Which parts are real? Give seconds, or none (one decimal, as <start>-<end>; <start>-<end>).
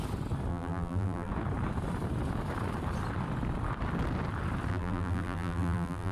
0.0-0.5; 1.3-4.7